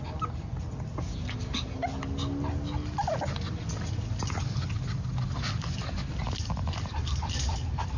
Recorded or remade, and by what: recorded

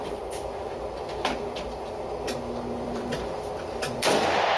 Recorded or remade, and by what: remade, vocoder, BigVGAN v2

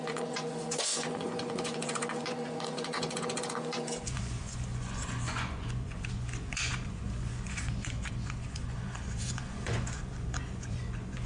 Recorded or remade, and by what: remade, vocoder, Vocos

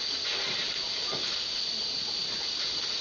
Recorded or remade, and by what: recorded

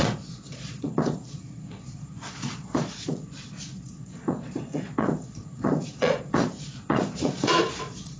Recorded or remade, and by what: remade, vocoder, Vocos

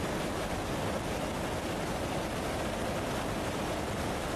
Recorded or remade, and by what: recorded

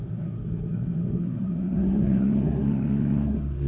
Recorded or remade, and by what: remade, codec, SNAC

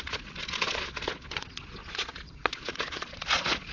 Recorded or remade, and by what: remade, vocoder, Vocos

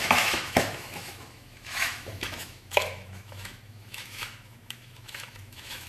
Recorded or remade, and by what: remade, autoencoder, DAC-VAE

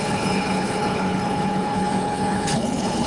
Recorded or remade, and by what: remade, codec, HILCodec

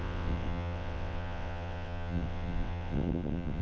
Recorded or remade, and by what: remade, vocoder, WaveNeXt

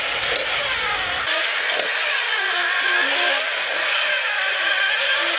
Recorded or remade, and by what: recorded